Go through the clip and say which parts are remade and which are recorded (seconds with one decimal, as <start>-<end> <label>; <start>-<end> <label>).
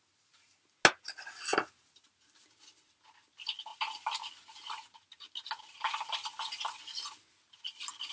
0.0-8.1 recorded